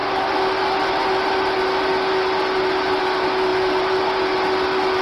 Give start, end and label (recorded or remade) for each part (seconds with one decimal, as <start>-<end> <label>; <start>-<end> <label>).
0.0-5.0 recorded